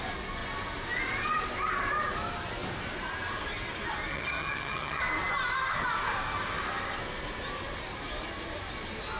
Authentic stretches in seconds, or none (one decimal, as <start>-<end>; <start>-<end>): 0.0-4.1; 5.0-9.2